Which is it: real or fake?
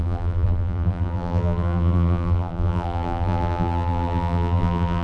fake